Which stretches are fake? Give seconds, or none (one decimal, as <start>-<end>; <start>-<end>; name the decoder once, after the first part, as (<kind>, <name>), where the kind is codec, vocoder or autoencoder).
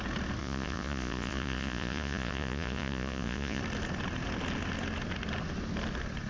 0.4-3.6 (vocoder, Vocos)